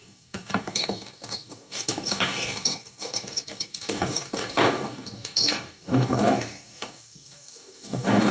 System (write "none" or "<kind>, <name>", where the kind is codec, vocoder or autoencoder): codec, DAC